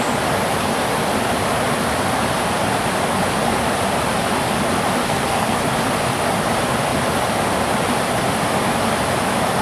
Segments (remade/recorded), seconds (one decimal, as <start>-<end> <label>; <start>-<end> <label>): 0.0-5.0 recorded; 5.0-5.6 remade; 5.6-9.6 recorded